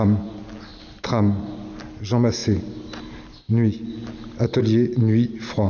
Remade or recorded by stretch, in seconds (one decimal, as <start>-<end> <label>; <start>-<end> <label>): 0.0-5.7 recorded